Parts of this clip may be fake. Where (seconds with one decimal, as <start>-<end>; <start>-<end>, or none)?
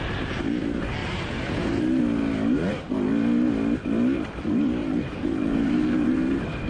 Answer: 1.0-2.0; 4.8-6.1